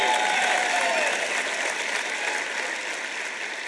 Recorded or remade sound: recorded